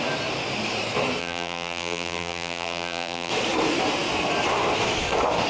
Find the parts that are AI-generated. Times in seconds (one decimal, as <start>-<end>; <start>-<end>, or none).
1.2-3.3